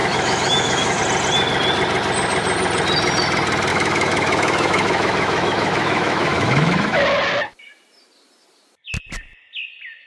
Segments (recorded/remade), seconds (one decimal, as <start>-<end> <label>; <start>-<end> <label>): 0.0-1.0 remade; 1.0-3.7 recorded; 3.7-7.0 remade; 7.0-10.1 recorded